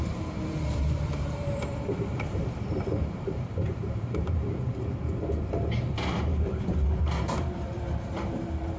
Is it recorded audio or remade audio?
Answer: remade